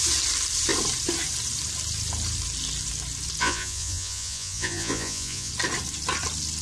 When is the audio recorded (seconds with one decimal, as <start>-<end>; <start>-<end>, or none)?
0.0-3.4; 5.5-6.6